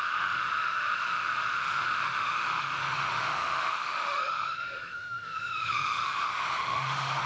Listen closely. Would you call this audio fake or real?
fake